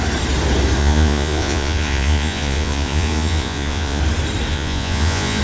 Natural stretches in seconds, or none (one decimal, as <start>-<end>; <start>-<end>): 0.0-0.8; 4.0-4.5